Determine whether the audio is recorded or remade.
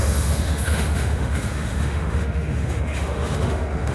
remade